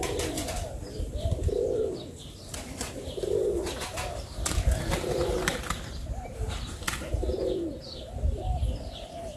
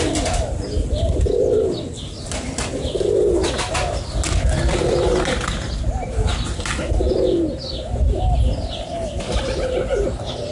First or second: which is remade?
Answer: first